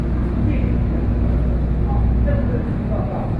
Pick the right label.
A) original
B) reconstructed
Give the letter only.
A